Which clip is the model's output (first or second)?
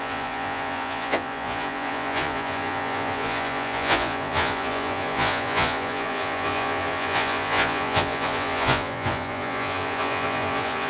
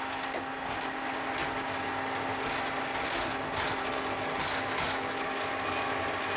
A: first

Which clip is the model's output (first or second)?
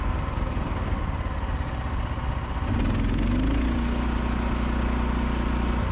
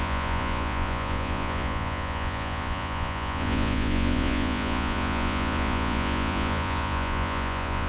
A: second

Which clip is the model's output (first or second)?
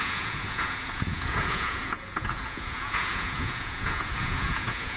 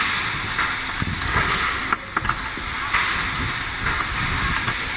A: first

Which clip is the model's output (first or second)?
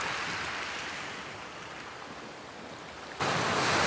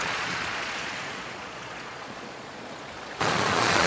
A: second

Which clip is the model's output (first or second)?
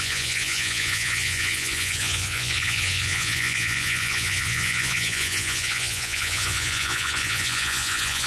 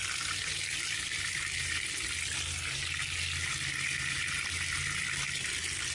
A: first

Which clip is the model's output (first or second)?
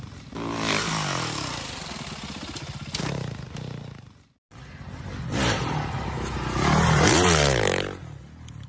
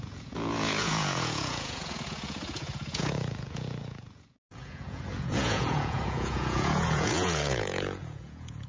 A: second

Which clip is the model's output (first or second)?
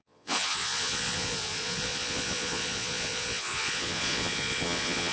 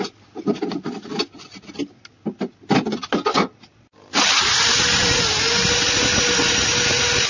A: first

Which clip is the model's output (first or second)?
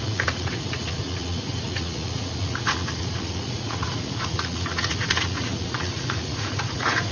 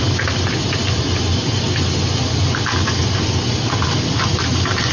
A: first